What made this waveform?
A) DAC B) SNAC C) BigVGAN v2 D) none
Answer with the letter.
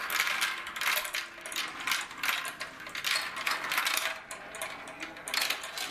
D